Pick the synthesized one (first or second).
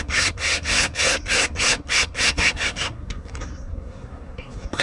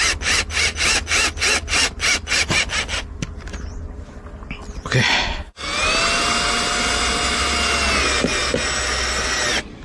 first